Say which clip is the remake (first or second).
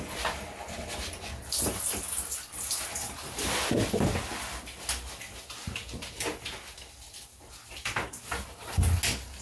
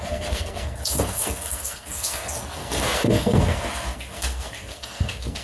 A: second